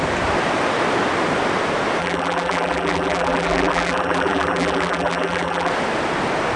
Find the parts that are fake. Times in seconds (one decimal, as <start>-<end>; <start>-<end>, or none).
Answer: 2.0-5.7